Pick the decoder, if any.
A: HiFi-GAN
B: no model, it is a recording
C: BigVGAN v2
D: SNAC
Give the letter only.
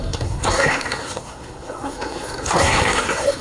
D